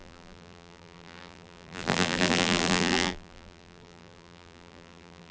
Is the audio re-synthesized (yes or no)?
yes